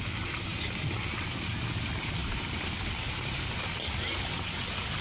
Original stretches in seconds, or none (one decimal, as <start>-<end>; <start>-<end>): 0.0-2.2; 3.4-5.0